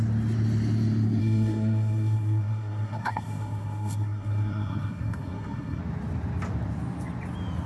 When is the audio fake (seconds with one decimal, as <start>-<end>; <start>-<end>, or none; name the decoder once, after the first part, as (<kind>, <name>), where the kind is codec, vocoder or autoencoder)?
1.2-5.8 (codec, SNAC)